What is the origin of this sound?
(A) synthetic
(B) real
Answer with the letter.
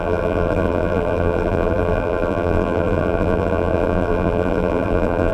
A